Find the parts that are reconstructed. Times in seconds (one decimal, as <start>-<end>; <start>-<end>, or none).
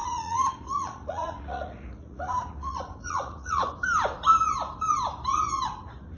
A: 0.0-3.7